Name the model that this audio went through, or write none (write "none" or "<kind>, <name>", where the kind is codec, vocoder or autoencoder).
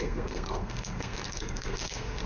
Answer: codec, SNAC